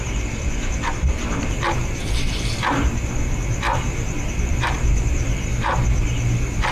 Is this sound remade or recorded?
remade